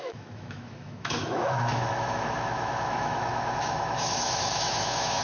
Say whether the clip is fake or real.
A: fake